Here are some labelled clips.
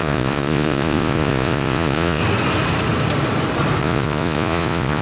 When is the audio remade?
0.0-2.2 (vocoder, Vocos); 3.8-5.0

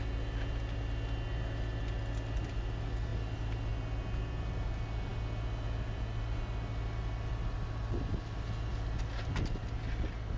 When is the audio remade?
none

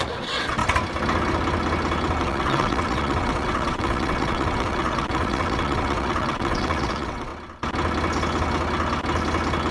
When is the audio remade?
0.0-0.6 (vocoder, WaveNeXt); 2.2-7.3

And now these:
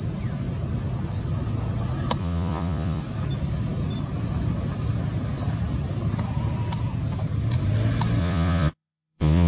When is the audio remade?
2.2-3.0 (vocoder, Vocos); 8.2-9.5

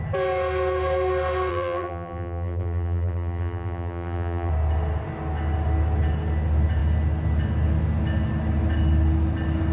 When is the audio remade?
1.5-4.5 (vocoder, BigVGAN v2)

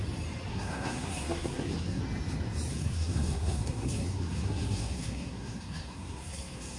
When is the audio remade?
0.5-2.0 (codec, SNAC); 2.7-6.8

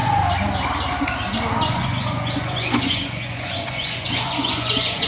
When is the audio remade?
1.7-5.1 (vocoder, Vocos)

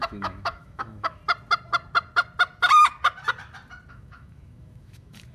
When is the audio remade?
0.0-1.2 (autoencoder, DAC-VAE); 3.9-5.3